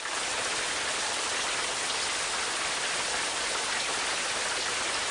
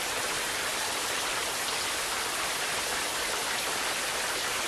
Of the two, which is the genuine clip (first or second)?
first